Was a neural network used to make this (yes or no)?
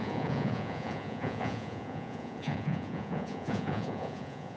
yes